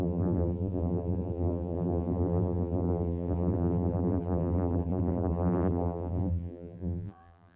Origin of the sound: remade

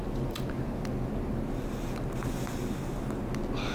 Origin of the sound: recorded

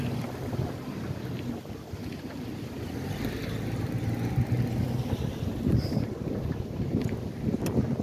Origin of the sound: recorded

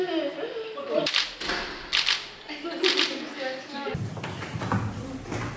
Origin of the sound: recorded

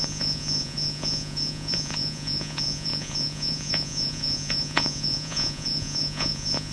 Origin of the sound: remade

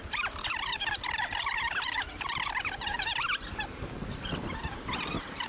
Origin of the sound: remade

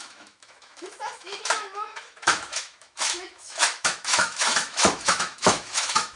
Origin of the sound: remade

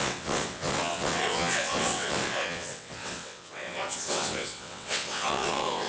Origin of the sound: remade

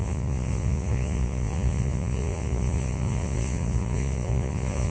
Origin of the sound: remade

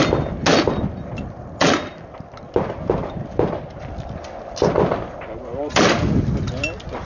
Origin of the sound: recorded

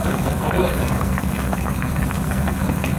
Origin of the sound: remade